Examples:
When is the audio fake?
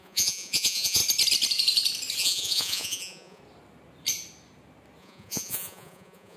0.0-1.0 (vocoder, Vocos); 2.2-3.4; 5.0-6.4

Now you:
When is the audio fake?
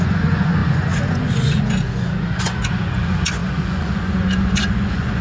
0.0-5.2 (vocoder, Vocos)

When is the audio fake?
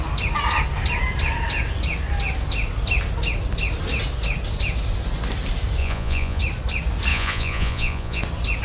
5.8-6.4 (vocoder, Vocos); 7.1-8.2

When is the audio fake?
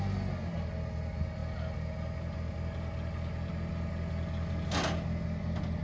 none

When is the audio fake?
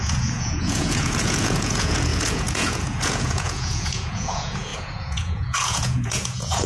0.0-6.7 (vocoder, Vocos)